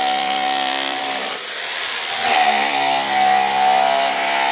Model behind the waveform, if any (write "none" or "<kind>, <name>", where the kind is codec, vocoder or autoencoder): vocoder, BigVGAN v2